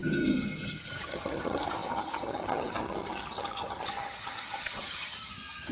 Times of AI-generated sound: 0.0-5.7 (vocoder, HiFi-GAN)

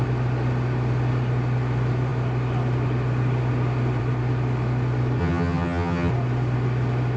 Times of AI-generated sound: 5.2-6.1 (vocoder, HiFi-GAN)

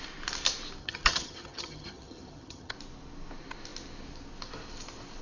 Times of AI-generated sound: 0.8-2.7 (vocoder, HiFi-GAN)

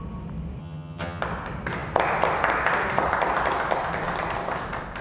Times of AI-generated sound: 0.6-1.2 (vocoder, HiFi-GAN)

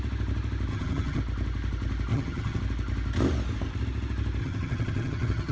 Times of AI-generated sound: 0.7-1.2 (vocoder, HiFi-GAN); 2.1-2.6; 4.4-5.5

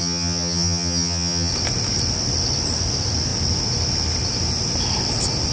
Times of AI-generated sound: 0.0-1.5 (vocoder, HiFi-GAN)

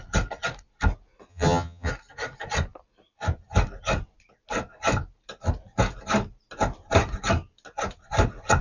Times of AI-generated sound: 1.3-1.9 (vocoder, HiFi-GAN)

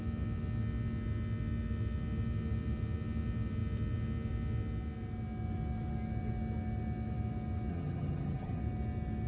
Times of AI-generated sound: 7.7-8.6 (vocoder, HiFi-GAN)